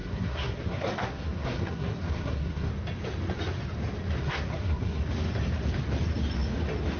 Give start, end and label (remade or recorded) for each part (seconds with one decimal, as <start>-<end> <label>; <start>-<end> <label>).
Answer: 0.0-2.7 remade; 2.7-4.2 recorded; 4.2-5.0 remade; 5.0-7.0 recorded